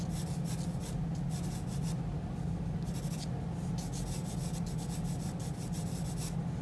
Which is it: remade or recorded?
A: recorded